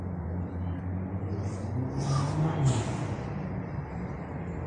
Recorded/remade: recorded